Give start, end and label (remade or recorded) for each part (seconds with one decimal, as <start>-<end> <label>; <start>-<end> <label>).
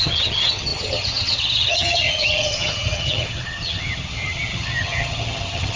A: 0.0-5.8 remade